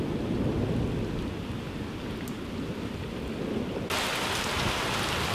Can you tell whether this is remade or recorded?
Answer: recorded